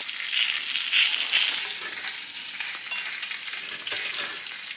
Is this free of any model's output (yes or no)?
yes